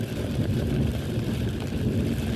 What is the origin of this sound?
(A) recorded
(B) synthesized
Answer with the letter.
A